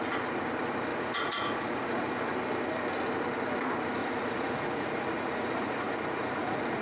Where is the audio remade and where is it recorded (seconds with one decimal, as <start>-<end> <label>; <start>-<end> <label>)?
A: 0.0-0.9 recorded; 0.9-2.0 remade; 2.0-4.0 recorded; 4.0-6.8 remade